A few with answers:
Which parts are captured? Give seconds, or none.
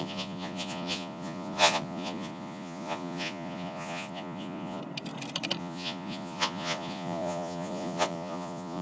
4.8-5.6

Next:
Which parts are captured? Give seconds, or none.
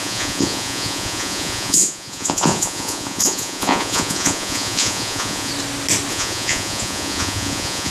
5.5-6.1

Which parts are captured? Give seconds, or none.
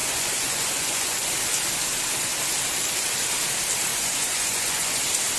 1.3-3.9; 5.0-5.4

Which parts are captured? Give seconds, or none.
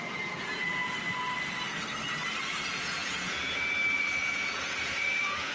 0.8-2.5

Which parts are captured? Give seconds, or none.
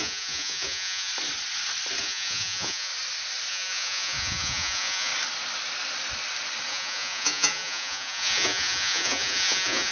1.1-2.0; 2.9-3.5; 5.1-6.7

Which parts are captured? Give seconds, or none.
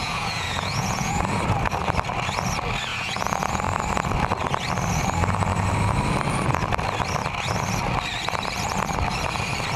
1.2-2.9; 3.6-9.8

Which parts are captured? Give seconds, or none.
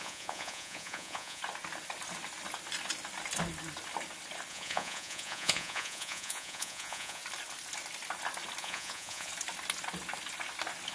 1.4-4.5; 7.2-8.6; 9.3-10.9